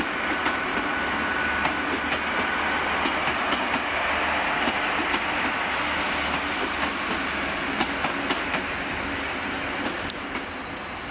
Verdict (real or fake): real